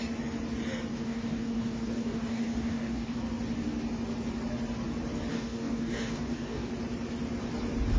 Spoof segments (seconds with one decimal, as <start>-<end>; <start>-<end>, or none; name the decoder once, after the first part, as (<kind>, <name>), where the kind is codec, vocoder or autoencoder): 0.9-3.2 (codec, DAC); 5.3-6.7